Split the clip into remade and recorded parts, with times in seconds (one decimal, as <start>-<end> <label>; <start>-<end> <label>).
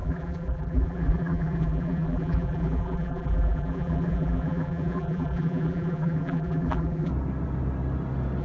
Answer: 0.0-7.1 remade; 7.1-8.4 recorded